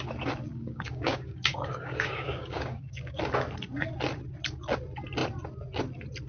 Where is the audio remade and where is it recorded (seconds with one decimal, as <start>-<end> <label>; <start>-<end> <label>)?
0.0-0.5 recorded; 0.5-3.2 remade; 3.2-6.3 recorded